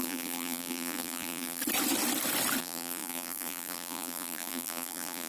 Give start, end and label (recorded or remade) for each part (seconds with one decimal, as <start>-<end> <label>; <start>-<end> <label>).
0.0-1.6 remade; 1.6-2.6 recorded; 2.6-5.3 remade